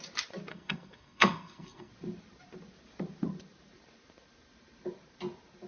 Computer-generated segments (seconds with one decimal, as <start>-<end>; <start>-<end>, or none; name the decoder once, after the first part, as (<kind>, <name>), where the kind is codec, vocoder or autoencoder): 0.5-1.9 (codec, SNAC)